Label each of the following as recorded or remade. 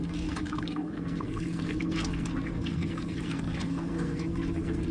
remade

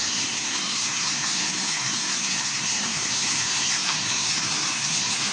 remade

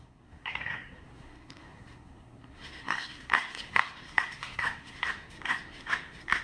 remade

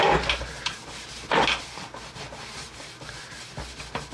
recorded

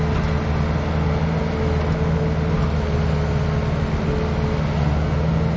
recorded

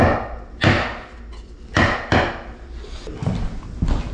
recorded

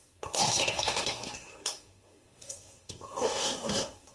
remade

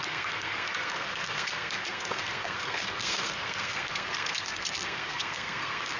remade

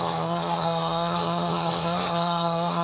remade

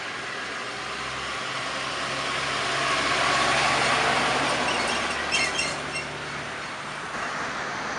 recorded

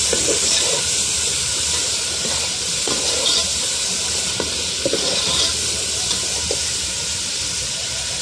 recorded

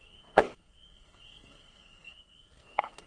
remade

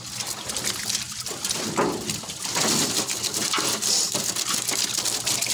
recorded